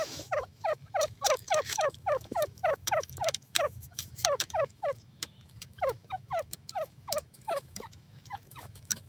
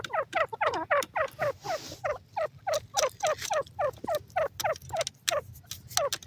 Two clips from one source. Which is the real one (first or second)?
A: second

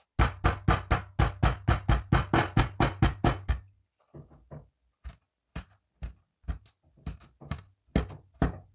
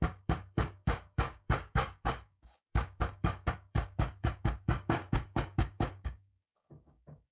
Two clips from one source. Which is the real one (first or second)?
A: first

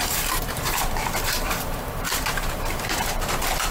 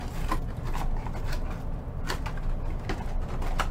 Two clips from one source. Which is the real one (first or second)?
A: second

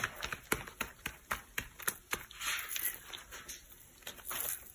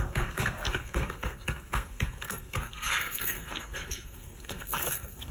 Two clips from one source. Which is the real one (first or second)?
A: first